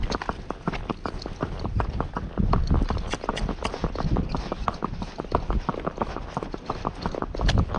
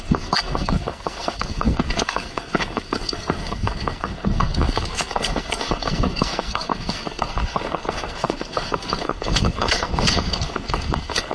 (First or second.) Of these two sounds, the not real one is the second